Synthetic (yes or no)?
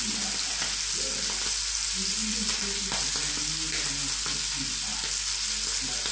no